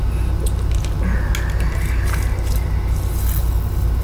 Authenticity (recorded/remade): recorded